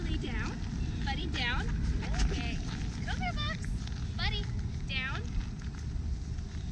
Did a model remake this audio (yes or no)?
no